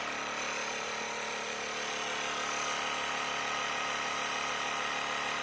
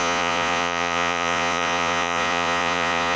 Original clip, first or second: first